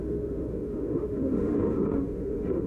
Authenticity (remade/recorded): remade